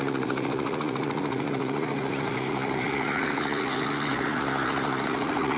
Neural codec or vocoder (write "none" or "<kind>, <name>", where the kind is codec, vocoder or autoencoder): vocoder, Vocos